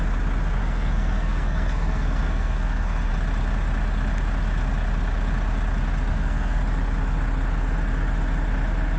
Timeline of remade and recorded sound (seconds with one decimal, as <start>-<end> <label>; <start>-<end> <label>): 0.0-0.6 recorded; 0.6-3.1 remade; 3.1-6.1 recorded; 6.1-6.6 remade; 6.6-9.0 recorded